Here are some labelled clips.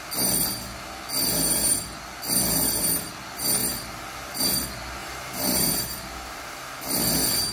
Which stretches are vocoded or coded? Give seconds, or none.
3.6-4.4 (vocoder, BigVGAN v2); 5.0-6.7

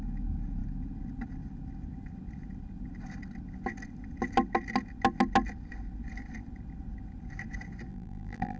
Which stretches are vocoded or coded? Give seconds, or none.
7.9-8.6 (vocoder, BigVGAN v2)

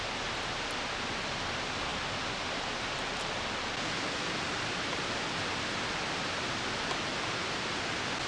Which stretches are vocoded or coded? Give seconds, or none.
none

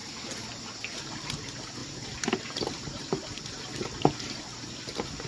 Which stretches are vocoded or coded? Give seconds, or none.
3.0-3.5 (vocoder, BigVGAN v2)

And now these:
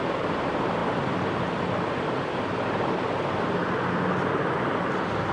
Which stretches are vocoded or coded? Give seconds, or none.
none

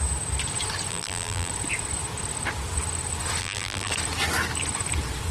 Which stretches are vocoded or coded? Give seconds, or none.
0.9-1.5 (vocoder, BigVGAN v2); 3.4-3.9